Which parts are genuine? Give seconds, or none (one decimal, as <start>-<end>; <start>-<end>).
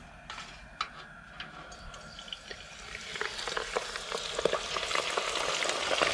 0.0-6.1